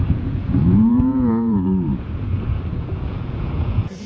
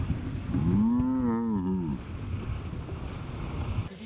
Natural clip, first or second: second